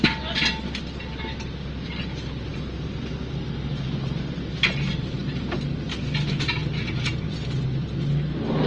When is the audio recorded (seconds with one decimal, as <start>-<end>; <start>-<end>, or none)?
0.0-8.7